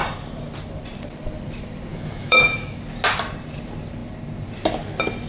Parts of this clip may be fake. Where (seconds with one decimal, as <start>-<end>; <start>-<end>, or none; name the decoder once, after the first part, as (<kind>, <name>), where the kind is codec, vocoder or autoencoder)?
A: 1.9-2.8 (autoencoder, DAC-VAE)